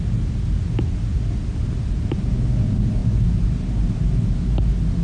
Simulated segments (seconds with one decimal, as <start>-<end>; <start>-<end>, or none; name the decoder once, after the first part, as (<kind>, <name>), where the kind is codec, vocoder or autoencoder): none